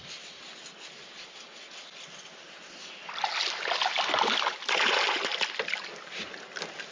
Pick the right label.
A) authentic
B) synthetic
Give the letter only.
A